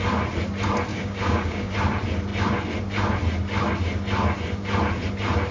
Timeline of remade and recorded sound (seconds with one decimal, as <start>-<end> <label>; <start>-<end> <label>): 0.0-0.9 recorded; 0.9-1.7 remade; 1.7-5.5 recorded

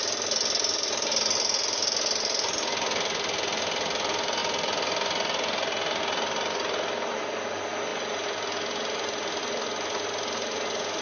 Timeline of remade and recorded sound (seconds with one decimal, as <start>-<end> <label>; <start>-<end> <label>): 0.0-11.0 recorded

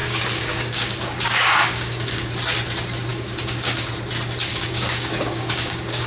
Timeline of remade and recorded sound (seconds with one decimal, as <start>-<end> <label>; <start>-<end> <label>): 0.0-2.3 remade; 2.3-3.1 recorded; 3.1-3.9 remade; 3.9-4.5 recorded; 4.5-6.1 remade

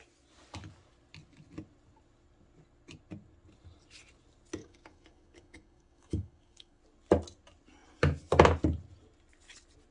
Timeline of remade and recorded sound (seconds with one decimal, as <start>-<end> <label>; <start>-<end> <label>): 0.0-4.6 recorded; 4.6-6.8 remade; 6.8-9.9 recorded

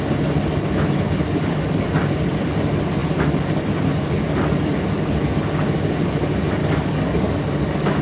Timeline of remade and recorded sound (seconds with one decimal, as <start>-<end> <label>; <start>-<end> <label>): 0.0-6.6 recorded; 6.6-8.0 remade

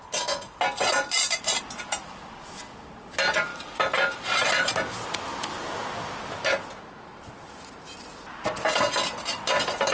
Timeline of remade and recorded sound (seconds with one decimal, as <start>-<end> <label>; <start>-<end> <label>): 0.0-9.9 recorded

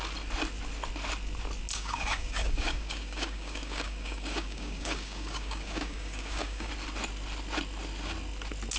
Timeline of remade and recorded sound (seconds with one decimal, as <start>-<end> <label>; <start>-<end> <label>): 0.0-1.7 recorded; 1.7-6.7 remade; 6.7-8.8 recorded

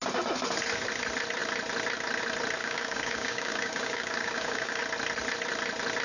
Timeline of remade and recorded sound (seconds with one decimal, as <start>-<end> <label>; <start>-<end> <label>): 0.0-2.6 recorded; 2.6-4.8 remade; 4.8-6.0 recorded